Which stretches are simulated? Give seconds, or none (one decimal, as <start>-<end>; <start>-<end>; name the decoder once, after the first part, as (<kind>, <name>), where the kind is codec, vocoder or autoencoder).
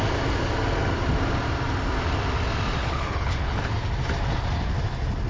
2.8-3.7 (codec, HILCodec)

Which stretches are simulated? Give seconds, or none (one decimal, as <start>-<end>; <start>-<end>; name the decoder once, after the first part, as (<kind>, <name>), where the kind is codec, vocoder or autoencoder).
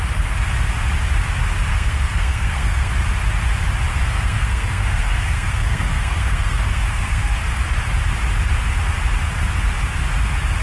1.7-2.9 (codec, SNAC); 3.9-7.4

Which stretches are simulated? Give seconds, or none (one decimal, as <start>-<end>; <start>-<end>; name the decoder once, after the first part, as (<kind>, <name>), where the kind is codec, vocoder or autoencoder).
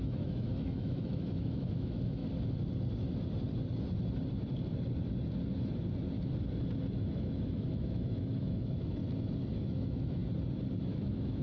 0.0-2.2 (autoencoder, DAC-VAE); 7.1-9.0; 9.5-10.2; 10.9-11.4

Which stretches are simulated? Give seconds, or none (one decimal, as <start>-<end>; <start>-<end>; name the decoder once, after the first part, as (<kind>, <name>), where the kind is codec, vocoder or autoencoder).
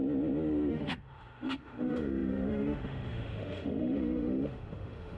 0.7-5.2 (autoencoder, DAC-VAE)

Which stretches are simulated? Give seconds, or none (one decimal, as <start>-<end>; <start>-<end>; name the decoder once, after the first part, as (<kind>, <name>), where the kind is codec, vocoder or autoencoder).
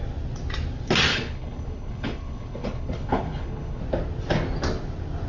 1.1-3.8 (codec, HILCodec)